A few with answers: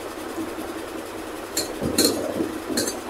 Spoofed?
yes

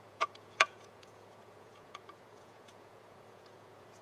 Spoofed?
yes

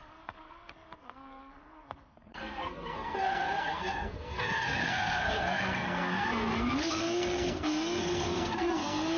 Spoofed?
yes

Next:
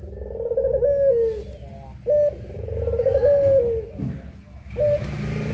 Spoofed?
no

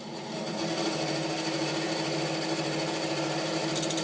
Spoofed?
no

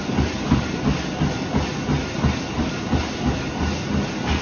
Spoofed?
no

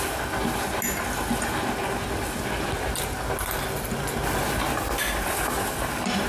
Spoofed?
no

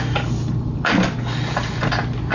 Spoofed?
no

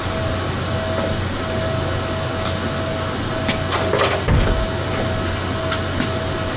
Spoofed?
no